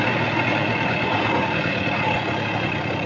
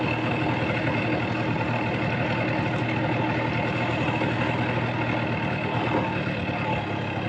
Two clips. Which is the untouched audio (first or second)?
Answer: second